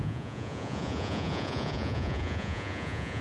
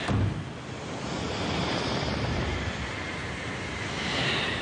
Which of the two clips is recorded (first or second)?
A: second